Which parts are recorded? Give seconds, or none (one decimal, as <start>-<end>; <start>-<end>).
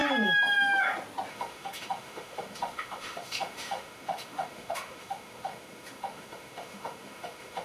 0.0-1.3